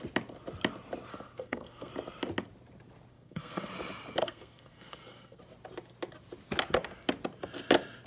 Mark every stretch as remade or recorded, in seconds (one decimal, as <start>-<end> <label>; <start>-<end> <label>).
0.0-1.1 recorded; 1.1-1.9 remade; 1.9-3.1 recorded; 3.1-3.7 remade; 3.7-4.2 recorded; 4.2-5.4 remade; 5.4-8.1 recorded